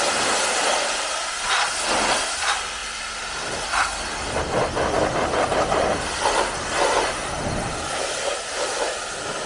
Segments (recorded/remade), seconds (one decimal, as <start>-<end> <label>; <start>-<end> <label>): 0.0-9.5 recorded